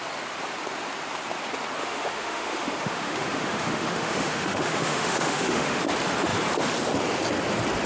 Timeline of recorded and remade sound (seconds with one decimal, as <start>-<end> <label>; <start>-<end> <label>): 0.0-1.8 recorded; 1.8-5.8 remade; 5.8-7.9 recorded